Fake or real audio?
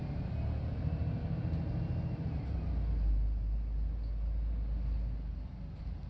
real